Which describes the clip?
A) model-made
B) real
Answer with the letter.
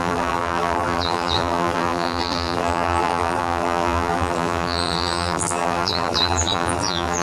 A